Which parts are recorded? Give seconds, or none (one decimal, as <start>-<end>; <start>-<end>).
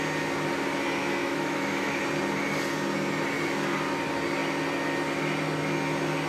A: 0.0-1.2; 2.0-6.3